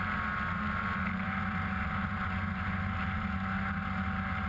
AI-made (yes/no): no